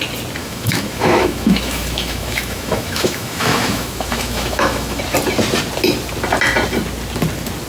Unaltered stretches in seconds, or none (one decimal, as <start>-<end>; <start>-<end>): 0.0-0.4; 5.0-7.7